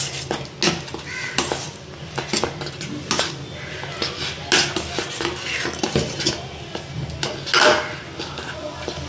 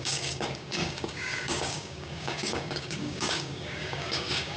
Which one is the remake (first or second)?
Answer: second